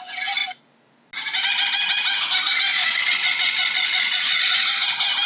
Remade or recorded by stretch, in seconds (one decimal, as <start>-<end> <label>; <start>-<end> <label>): 0.0-2.7 recorded; 2.7-4.8 remade; 4.8-5.3 recorded